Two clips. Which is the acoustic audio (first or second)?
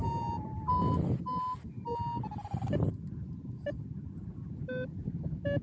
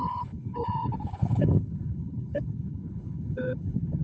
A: first